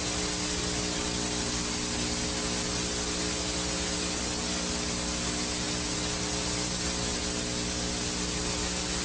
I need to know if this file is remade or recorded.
recorded